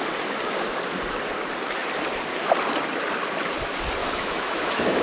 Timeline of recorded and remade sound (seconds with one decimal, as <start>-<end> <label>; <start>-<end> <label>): 0.0-4.0 recorded; 4.0-5.0 remade